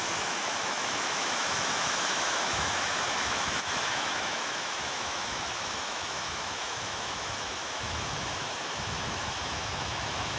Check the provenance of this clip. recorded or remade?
remade